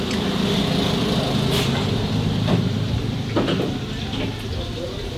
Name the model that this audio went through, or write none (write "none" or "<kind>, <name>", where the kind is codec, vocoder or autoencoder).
none